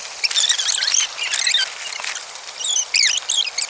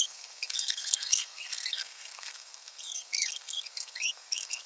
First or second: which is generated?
second